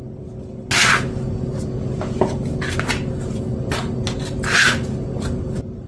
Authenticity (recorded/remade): recorded